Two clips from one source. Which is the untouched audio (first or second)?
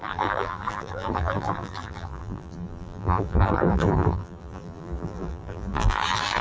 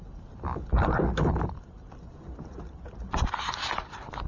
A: second